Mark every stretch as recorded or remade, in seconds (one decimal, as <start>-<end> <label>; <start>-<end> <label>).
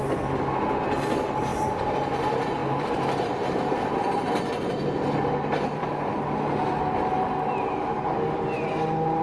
0.0-1.5 recorded; 1.5-2.1 remade; 2.1-2.6 recorded; 2.6-3.9 remade; 3.9-9.2 recorded